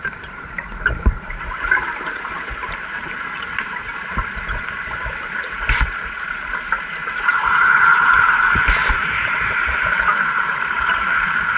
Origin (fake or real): fake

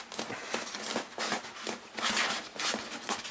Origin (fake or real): real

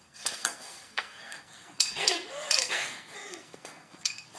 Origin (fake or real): fake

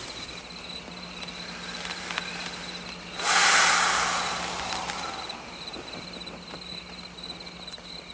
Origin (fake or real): real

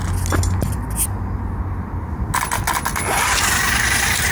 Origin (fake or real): real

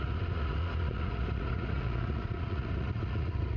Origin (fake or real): fake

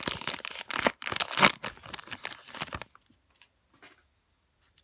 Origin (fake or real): real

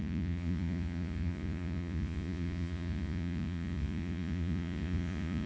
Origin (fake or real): fake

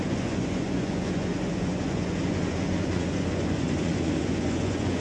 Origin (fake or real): fake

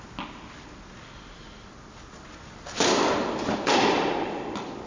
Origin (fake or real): real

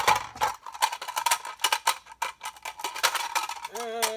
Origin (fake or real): real